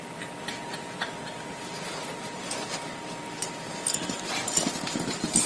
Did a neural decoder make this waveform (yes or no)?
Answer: no